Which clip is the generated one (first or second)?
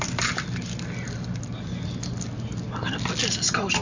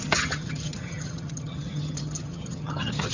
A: second